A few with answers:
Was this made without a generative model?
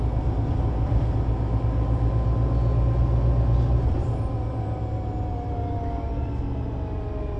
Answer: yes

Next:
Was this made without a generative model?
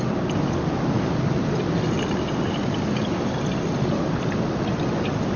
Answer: yes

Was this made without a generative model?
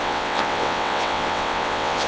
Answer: no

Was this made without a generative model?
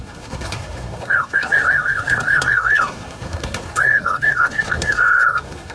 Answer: no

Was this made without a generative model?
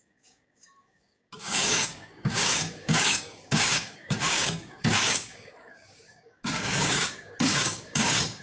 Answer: no